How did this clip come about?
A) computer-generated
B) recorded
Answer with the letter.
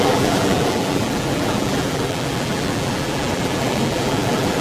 A